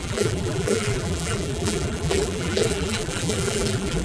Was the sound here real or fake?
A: fake